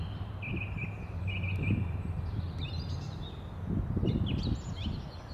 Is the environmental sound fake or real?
real